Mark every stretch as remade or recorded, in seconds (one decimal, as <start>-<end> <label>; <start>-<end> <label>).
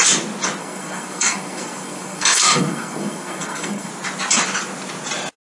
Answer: 0.0-0.6 recorded; 0.6-3.9 remade; 3.9-5.5 recorded